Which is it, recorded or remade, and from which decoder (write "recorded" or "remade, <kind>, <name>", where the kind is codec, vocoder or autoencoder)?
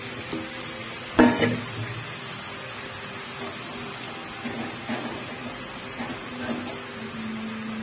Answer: recorded